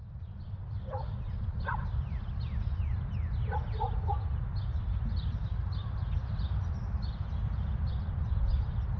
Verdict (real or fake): real